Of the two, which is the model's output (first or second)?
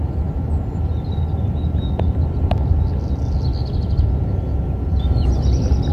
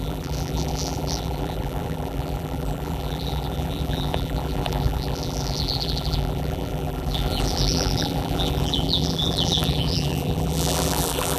second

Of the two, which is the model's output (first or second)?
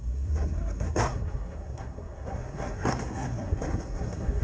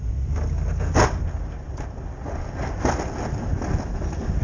first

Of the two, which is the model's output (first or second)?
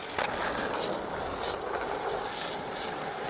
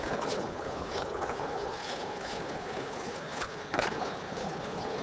second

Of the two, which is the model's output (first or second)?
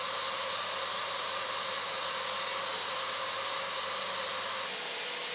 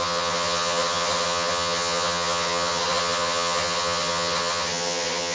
second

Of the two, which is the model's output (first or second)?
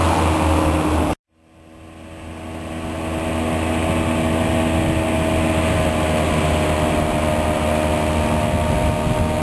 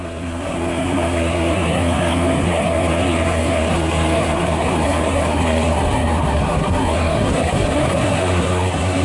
second